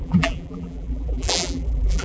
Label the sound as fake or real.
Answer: fake